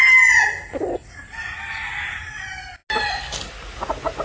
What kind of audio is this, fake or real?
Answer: real